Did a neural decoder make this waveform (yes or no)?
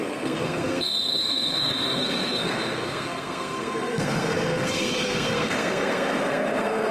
yes